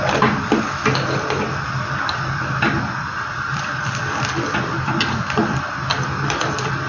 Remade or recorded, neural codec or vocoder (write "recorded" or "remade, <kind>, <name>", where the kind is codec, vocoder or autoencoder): recorded